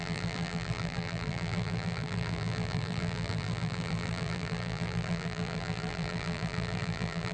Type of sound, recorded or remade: remade